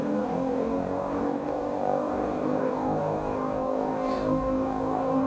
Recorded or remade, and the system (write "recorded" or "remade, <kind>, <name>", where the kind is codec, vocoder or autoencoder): remade, codec, DAC